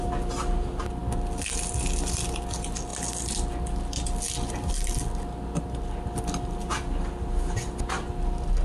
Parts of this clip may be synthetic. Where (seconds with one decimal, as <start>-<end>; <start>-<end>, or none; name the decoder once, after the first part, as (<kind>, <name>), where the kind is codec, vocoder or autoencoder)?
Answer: none